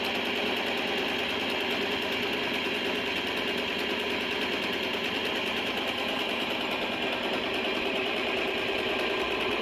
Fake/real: real